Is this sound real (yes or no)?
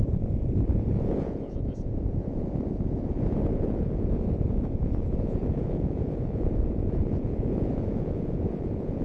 no